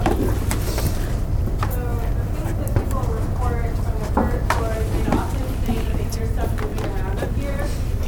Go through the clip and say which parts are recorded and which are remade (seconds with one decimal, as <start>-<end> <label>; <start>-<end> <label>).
0.0-8.1 recorded